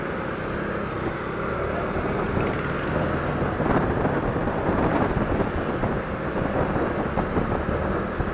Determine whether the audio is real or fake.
real